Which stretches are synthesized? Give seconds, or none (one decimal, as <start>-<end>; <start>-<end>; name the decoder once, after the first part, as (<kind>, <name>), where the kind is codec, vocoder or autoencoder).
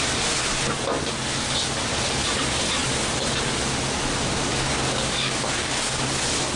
4.4-6.0 (codec, DAC)